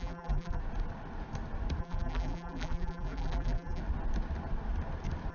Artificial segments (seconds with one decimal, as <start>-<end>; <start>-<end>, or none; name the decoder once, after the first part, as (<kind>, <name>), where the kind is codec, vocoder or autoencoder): 0.0-0.6 (vocoder, BigVGAN v2); 1.8-3.8